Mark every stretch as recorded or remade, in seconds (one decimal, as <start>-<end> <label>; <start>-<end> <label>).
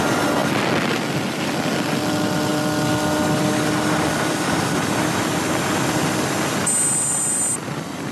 0.0-8.1 recorded